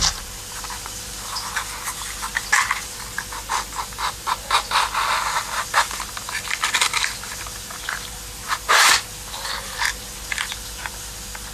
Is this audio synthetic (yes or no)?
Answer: no